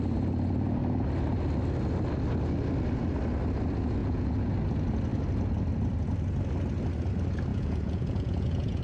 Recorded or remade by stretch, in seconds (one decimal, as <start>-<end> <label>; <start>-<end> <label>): 0.0-4.0 recorded; 4.0-4.5 remade; 4.5-7.5 recorded; 7.5-8.8 remade